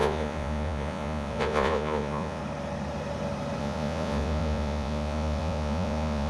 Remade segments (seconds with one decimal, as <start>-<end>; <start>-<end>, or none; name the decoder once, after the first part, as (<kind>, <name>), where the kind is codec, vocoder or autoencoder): 0.0-2.4 (vocoder, Vocos); 3.6-6.3

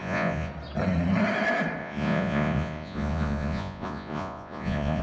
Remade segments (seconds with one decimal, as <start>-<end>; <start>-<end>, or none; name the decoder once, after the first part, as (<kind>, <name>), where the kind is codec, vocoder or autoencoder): 0.0-0.5 (vocoder, Vocos); 1.8-5.0

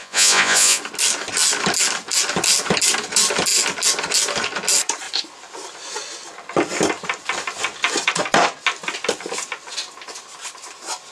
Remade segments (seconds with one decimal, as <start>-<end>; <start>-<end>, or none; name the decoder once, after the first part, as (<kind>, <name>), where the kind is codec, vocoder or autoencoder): 0.0-0.8 (vocoder, Vocos)

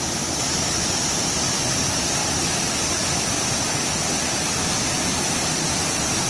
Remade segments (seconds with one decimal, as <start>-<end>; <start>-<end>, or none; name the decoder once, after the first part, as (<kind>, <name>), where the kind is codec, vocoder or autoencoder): none

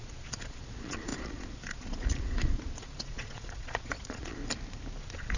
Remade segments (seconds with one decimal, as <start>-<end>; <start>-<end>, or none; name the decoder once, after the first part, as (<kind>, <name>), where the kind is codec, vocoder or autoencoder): 0.0-4.4 (vocoder, Vocos); 5.0-5.4